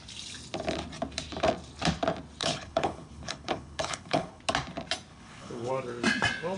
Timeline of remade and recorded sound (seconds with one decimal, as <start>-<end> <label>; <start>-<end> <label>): 0.0-2.4 recorded; 2.4-4.4 remade; 4.4-5.1 recorded; 5.1-5.7 remade; 5.7-6.6 recorded